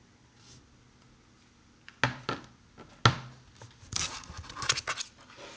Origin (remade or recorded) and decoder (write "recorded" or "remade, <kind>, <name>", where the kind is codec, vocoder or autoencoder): recorded